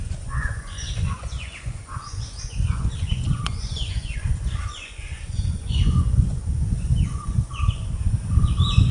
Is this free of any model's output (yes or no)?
no